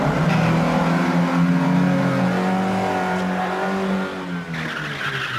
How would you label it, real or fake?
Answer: real